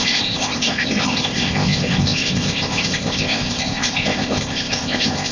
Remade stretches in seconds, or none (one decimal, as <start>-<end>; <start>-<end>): 0.0-5.3